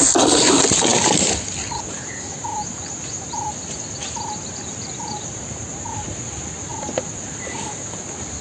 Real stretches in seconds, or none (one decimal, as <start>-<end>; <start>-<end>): 0.0-8.4